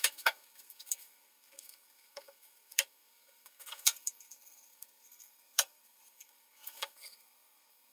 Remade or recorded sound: remade